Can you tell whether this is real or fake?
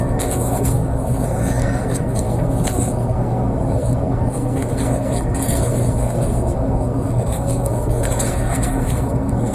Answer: fake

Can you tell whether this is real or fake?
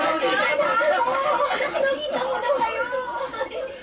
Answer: real